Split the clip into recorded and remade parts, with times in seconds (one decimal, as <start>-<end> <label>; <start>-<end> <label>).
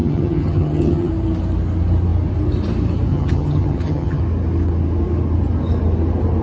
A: 0.0-1.1 remade; 1.1-3.1 recorded; 3.1-4.2 remade; 4.2-6.4 recorded